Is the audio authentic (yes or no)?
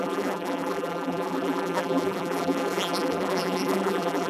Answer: no